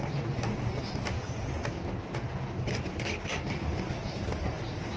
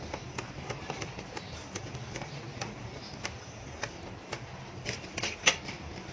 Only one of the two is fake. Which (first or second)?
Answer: second